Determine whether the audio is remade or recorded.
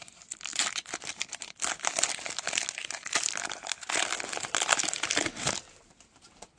recorded